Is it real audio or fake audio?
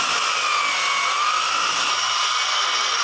real